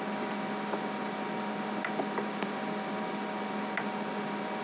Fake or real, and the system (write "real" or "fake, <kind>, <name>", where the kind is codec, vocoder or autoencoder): real